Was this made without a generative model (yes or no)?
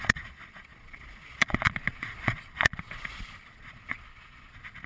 no